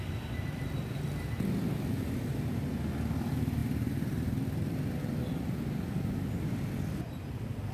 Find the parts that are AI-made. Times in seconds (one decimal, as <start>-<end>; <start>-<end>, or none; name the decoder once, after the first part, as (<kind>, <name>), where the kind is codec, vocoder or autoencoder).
none